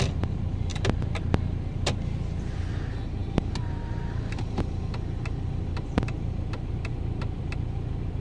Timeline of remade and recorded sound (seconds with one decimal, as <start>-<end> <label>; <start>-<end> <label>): 0.0-8.2 recorded